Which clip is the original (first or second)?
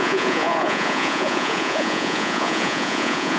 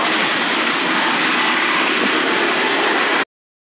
second